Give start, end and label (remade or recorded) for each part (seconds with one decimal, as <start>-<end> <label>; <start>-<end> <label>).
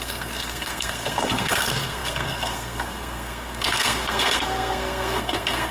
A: 0.0-5.7 remade